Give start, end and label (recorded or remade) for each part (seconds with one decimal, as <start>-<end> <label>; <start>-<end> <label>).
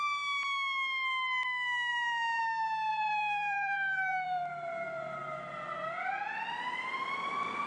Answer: 0.0-1.9 recorded; 1.9-2.4 remade; 2.4-2.9 recorded; 2.9-5.2 remade; 5.2-7.7 recorded